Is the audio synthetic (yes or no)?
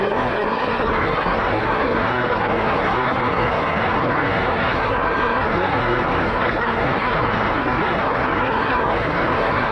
yes